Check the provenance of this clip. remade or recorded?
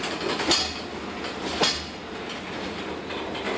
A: recorded